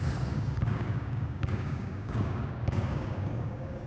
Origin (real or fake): fake